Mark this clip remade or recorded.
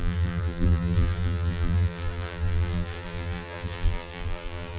remade